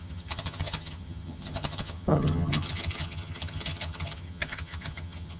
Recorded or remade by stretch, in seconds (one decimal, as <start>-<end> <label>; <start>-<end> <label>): 0.0-5.4 remade